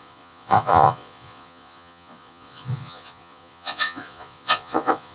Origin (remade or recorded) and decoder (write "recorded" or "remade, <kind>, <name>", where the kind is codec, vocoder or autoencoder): remade, vocoder, Vocos